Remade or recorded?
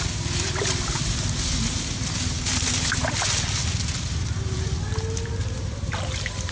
recorded